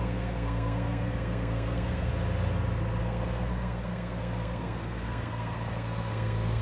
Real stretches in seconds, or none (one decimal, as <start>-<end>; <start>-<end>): 2.1-3.0

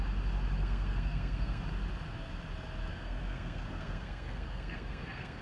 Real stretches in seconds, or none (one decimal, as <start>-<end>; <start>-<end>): 0.0-0.6; 1.6-2.9

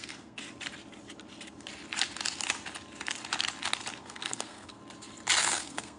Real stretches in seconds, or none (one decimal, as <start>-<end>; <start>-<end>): 0.4-4.0; 4.8-5.4

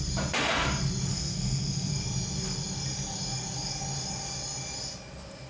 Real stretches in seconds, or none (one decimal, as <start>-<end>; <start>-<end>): 0.0-1.1; 1.9-5.5

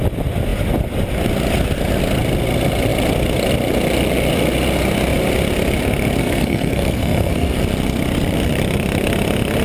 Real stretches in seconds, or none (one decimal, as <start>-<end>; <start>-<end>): 0.0-6.2; 7.6-9.6

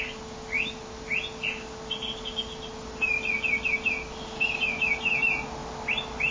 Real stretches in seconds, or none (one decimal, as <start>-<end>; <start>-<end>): 0.0-6.3